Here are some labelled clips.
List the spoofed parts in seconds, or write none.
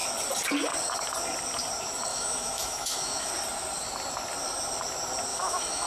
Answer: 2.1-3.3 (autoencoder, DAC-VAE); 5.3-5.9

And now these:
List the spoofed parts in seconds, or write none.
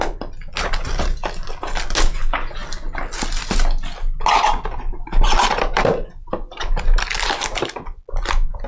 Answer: none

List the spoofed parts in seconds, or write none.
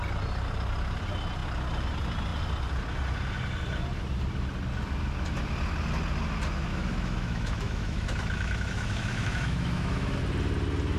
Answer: 6.7-10.2 (autoencoder, DAC-VAE)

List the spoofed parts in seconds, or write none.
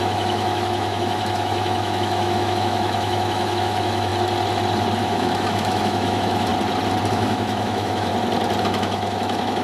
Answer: 0.0-4.1 (autoencoder, DAC-VAE); 5.0-6.5; 7.1-8.1; 8.6-9.6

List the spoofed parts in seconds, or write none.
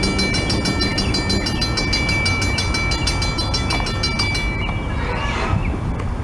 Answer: none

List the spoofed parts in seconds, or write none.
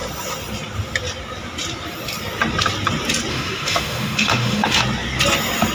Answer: 3.3-4.8 (autoencoder, DAC-VAE)